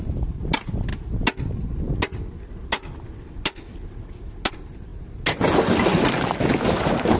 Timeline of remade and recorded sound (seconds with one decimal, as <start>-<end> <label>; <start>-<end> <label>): 0.0-0.9 remade; 0.9-4.5 recorded; 4.5-4.9 remade; 4.9-6.8 recorded; 6.8-7.2 remade